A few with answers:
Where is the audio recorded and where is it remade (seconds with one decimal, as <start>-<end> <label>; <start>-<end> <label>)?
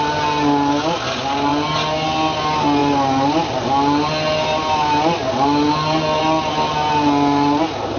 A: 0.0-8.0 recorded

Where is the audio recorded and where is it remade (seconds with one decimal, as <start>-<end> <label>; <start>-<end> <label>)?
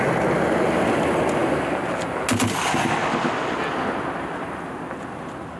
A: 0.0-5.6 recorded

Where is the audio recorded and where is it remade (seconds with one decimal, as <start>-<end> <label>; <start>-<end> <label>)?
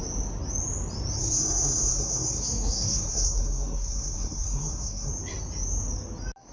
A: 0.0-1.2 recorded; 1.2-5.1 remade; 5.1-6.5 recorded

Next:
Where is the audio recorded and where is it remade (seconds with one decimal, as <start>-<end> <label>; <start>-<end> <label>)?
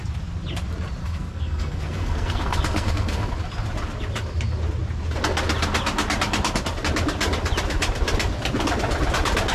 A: 0.0-1.0 recorded; 1.0-3.3 remade; 3.3-9.5 recorded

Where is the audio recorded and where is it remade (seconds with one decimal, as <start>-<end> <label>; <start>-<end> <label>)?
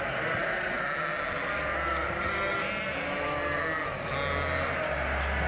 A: 0.0-5.5 recorded